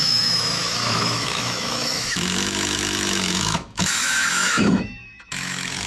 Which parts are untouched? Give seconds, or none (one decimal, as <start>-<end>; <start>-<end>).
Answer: none